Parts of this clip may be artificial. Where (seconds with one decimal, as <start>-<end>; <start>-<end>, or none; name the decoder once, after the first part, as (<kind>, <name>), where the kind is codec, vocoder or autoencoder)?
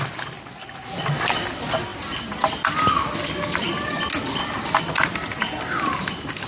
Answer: none